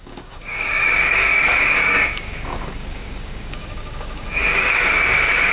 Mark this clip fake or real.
fake